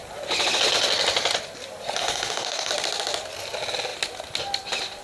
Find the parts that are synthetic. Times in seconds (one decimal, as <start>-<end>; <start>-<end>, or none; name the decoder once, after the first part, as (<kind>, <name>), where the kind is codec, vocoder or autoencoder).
2.0-2.7 (codec, DAC)